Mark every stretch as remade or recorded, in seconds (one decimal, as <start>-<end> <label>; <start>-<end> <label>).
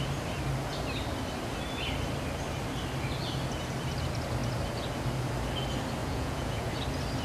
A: 0.0-6.0 recorded; 6.0-6.7 remade; 6.7-7.2 recorded